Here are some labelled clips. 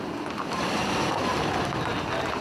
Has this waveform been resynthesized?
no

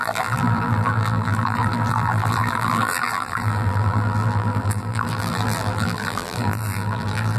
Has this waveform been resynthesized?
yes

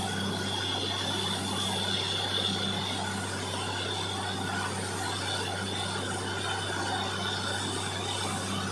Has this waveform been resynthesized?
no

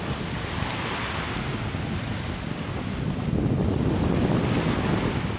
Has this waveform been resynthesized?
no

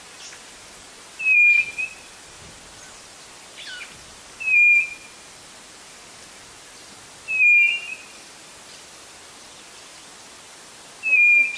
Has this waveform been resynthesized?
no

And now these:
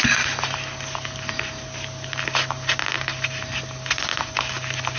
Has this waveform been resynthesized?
no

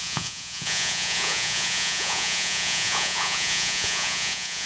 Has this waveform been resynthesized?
yes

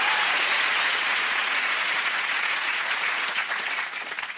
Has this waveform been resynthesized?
yes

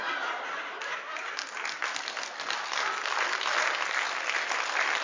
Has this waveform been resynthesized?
no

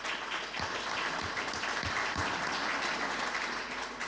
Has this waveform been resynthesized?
no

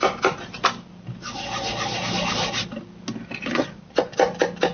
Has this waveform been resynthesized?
no